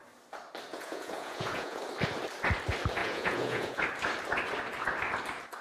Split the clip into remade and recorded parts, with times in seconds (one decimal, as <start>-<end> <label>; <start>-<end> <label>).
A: 0.0-0.7 recorded; 0.7-1.8 remade; 1.8-3.0 recorded; 3.0-3.8 remade; 3.8-5.6 recorded